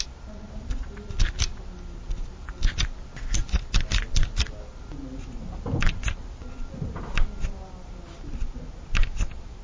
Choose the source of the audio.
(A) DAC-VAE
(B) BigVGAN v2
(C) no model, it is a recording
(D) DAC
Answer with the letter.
C